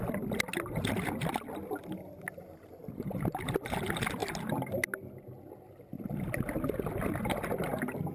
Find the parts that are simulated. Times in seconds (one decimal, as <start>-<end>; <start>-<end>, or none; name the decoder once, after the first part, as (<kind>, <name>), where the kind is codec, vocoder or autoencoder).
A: none